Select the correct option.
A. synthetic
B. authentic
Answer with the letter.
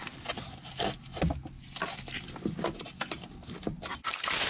B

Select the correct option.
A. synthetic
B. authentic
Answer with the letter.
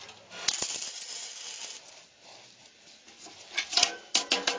B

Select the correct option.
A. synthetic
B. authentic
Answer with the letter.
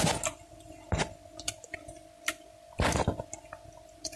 B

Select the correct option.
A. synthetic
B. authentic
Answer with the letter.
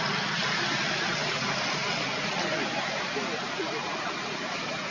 B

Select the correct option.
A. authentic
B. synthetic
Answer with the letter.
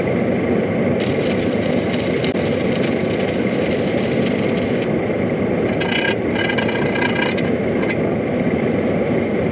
A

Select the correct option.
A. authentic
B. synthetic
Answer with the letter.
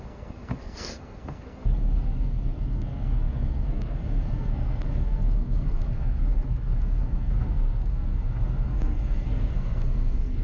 B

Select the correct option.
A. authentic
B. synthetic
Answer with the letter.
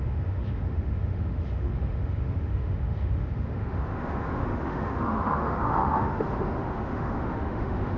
B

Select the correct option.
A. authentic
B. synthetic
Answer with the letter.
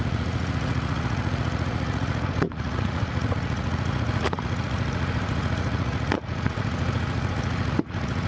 B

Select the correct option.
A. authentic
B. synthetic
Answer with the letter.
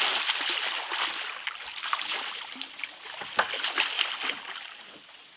A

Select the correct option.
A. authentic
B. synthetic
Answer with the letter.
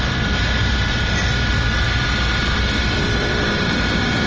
A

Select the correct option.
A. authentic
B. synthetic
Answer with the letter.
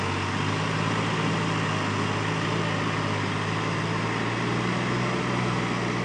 A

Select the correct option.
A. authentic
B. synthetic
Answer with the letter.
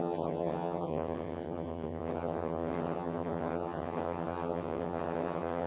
B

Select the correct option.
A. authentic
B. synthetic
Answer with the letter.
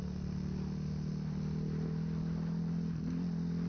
A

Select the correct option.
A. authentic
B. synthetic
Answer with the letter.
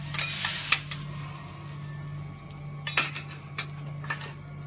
A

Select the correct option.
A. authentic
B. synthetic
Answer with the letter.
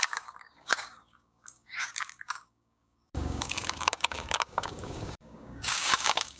B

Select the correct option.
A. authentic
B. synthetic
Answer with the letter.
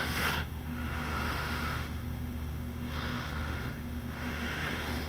B